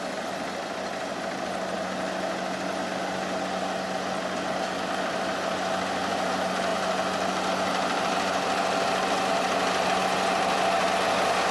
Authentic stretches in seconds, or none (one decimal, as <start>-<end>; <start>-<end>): 0.0-11.5